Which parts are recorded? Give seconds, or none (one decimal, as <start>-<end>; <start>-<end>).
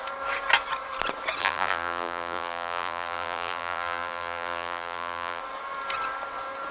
0.0-1.4; 5.4-6.7